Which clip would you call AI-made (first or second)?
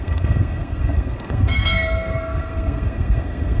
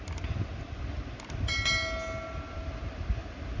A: first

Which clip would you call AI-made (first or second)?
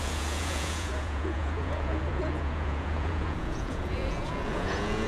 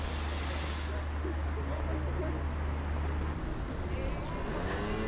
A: first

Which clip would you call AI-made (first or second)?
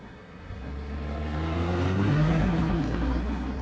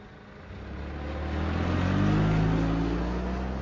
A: first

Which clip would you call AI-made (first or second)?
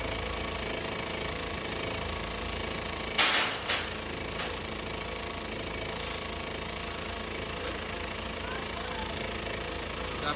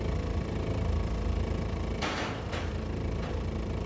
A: second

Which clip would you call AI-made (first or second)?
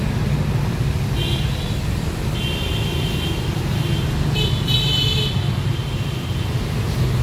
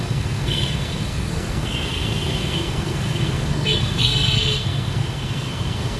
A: second